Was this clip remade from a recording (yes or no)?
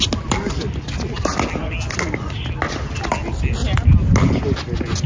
no